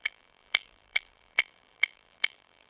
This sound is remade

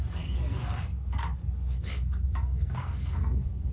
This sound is remade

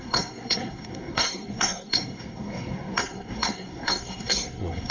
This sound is remade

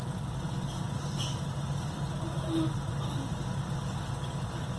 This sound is recorded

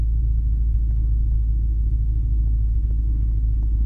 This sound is recorded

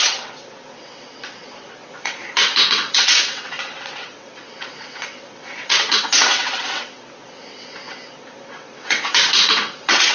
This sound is remade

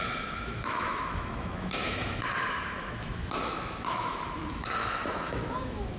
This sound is remade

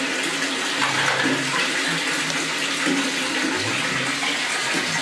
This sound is recorded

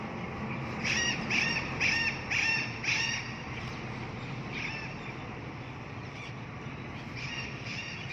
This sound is remade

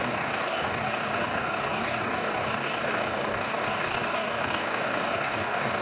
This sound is remade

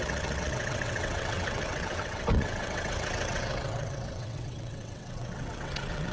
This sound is remade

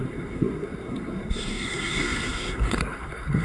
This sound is remade